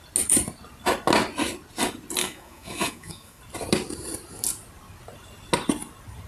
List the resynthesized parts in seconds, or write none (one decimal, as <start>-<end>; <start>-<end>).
2.2-3.4